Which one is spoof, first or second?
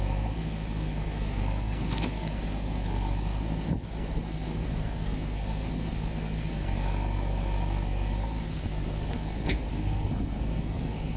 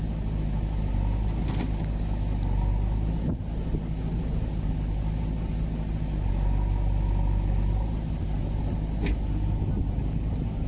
first